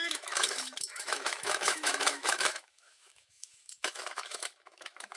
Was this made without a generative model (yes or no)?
no